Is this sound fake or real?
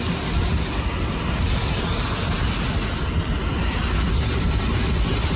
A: real